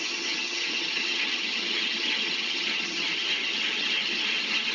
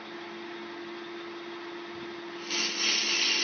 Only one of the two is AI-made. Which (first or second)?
first